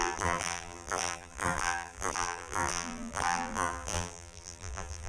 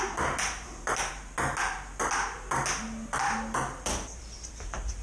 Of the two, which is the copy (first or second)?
first